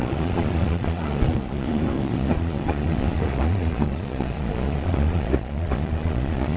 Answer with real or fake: fake